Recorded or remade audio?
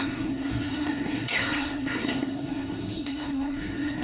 remade